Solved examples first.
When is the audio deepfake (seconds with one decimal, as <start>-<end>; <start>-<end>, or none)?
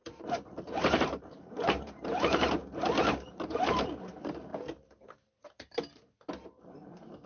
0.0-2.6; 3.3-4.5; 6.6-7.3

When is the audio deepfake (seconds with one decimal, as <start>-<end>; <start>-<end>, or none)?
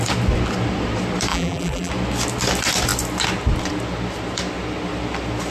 1.3-1.9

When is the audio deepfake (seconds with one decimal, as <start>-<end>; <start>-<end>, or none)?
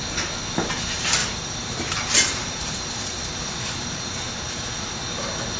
1.2-4.6